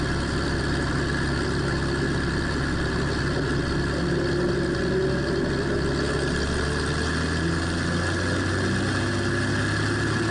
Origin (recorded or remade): recorded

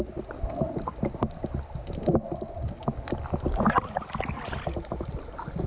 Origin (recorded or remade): recorded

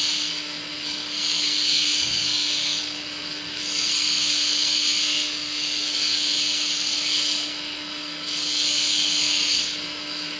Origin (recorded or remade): remade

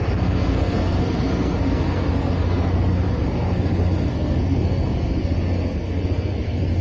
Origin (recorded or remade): remade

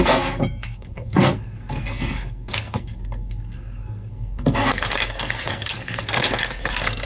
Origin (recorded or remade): remade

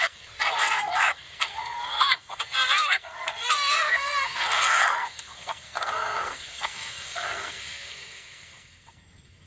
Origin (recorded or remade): remade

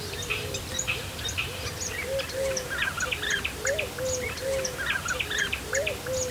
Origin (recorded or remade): recorded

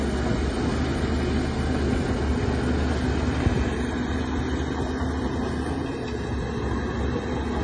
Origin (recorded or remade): recorded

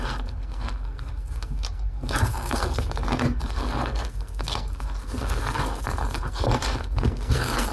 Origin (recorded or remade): remade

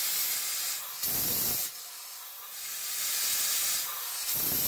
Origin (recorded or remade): recorded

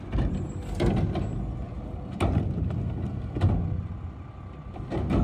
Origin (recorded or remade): recorded